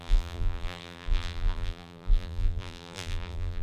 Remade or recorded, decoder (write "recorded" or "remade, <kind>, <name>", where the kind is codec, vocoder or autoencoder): remade, vocoder, BigVGAN v2